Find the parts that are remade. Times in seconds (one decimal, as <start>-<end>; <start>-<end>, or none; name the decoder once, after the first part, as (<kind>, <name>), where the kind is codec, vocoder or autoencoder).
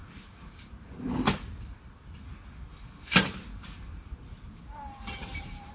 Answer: 4.7-5.7 (vocoder, BigVGAN v2)